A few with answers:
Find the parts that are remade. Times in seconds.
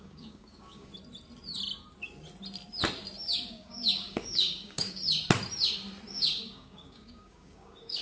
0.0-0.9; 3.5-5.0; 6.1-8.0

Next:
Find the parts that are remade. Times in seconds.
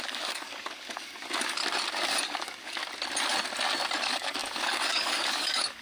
0.0-1.6; 2.2-2.8; 4.0-5.8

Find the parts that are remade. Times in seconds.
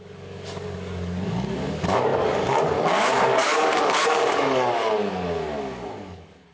0.0-6.5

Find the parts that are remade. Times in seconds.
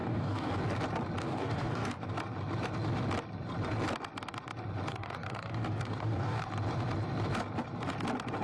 0.0-0.6; 1.2-2.0; 4.9-6.5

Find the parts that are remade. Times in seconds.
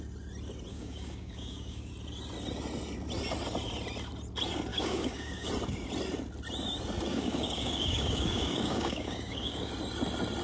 0.7-1.9; 4.7-5.5; 7.1-9.7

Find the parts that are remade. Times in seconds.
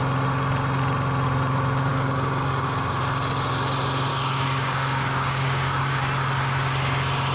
1.9-3.0; 4.1-6.0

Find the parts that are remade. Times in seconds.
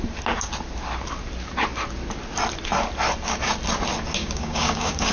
4.2-5.1